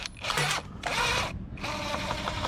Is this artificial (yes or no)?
yes